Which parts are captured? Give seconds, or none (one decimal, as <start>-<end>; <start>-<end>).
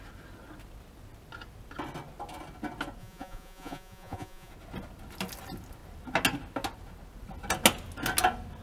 0.0-3.0; 4.5-8.6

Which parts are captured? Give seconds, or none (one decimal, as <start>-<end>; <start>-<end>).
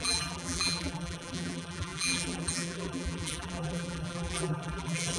none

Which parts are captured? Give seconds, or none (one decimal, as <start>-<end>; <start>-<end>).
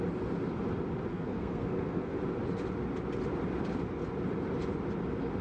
0.0-1.1; 2.1-5.4